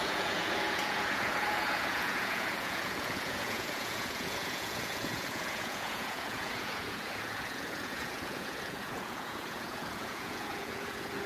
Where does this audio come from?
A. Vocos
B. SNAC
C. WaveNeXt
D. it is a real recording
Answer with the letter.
A